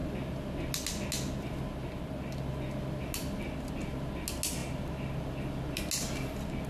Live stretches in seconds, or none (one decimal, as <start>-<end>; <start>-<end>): 0.0-6.7